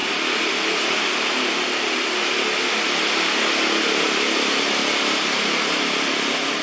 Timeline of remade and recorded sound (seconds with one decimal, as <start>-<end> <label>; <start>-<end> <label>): 0.0-4.0 recorded; 4.0-4.8 remade; 4.8-5.8 recorded; 5.8-6.6 remade

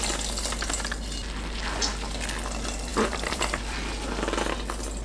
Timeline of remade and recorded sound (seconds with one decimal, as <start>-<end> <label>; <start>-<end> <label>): 0.0-2.9 recorded; 2.9-3.9 remade; 3.9-5.0 recorded

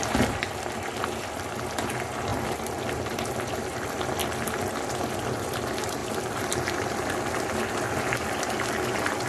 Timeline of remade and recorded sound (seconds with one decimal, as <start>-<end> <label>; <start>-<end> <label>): 0.0-6.0 recorded; 6.0-7.4 remade; 7.4-9.3 recorded

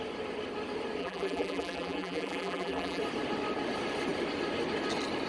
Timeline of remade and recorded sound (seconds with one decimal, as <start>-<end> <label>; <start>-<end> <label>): 0.0-1.0 recorded; 1.0-3.0 remade; 3.0-5.3 recorded

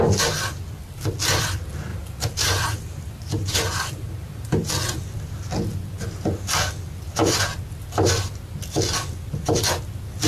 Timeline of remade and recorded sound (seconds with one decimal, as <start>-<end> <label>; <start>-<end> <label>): 0.0-1.9 recorded; 1.9-4.7 remade; 4.7-10.3 recorded

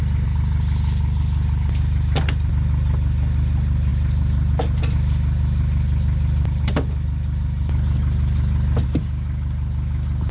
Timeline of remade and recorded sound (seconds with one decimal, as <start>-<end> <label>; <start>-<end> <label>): 0.0-3.9 recorded; 3.9-4.8 remade; 4.8-10.3 recorded

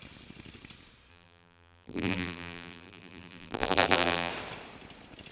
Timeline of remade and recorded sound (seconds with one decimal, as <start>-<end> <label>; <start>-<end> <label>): 0.0-1.1 recorded; 1.1-4.3 remade; 4.3-5.3 recorded